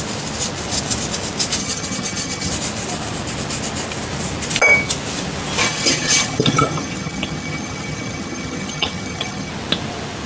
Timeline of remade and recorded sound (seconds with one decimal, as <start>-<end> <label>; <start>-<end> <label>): 0.0-1.6 recorded; 1.6-2.5 remade; 2.5-5.6 recorded; 5.6-9.5 remade; 9.5-10.3 recorded